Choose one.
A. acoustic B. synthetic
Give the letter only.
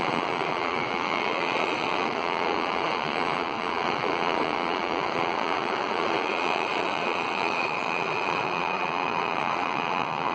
B